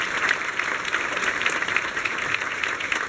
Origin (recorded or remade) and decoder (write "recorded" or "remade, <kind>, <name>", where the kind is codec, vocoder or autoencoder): remade, vocoder, BigVGAN v2